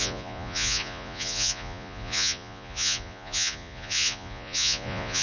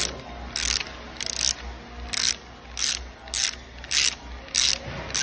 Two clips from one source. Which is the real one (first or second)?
second